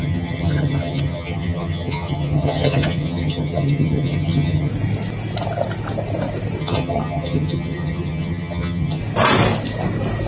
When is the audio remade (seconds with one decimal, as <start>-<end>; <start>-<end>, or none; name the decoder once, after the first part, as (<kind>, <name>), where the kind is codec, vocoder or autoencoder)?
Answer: 0.0-4.7 (vocoder, HiFi-GAN); 6.6-9.0